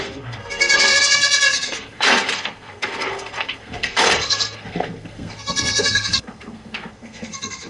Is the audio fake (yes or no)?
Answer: yes